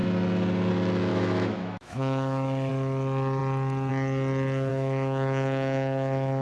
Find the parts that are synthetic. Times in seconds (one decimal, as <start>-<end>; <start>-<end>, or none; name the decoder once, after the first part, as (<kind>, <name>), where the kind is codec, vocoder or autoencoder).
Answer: 1.1-2.7 (autoencoder, DAC-VAE); 4.7-6.4